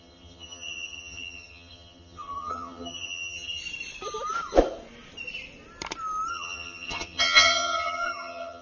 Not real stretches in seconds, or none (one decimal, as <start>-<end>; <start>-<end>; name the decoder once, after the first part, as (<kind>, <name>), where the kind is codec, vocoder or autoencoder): 0.0-3.6 (vocoder, HiFi-GAN); 6.3-8.6